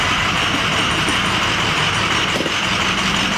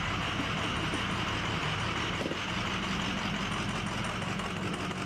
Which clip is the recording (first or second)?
second